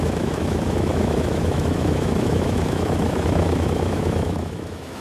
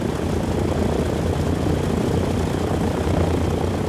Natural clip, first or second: second